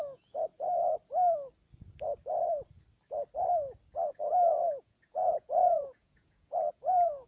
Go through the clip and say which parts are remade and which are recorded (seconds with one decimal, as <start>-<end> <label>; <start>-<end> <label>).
0.0-0.5 remade; 0.5-4.8 recorded; 4.8-7.3 remade